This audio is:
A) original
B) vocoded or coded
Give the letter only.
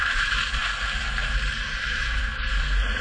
B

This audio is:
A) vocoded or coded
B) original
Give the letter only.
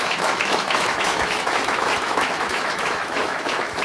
A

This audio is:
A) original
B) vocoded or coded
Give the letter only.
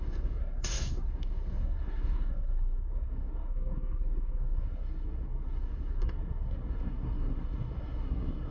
B